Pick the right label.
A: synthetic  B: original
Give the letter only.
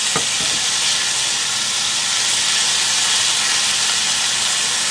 B